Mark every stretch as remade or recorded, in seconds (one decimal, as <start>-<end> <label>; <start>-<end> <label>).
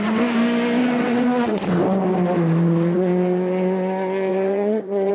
0.0-0.8 recorded; 0.8-1.8 remade; 1.8-4.3 recorded; 4.3-5.1 remade